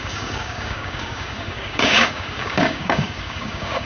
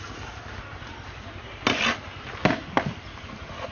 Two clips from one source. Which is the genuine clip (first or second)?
second